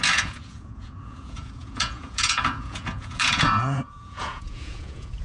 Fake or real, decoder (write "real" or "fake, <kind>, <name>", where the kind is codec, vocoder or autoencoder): fake, vocoder, Vocos